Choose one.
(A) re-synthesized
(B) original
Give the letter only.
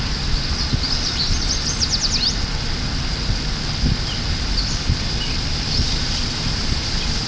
B